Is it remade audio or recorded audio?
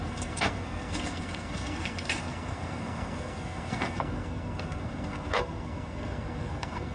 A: remade